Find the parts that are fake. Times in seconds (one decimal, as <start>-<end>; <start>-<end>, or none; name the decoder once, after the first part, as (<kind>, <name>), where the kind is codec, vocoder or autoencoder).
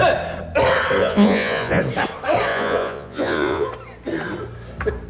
1.0-1.8 (vocoder, Vocos); 2.5-3.7